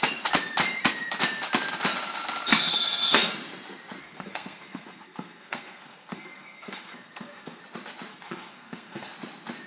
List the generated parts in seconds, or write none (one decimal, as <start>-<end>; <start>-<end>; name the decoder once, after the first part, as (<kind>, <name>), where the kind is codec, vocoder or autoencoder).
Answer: 2.5-3.3 (codec, SNAC); 4.0-7.6; 8.1-9.1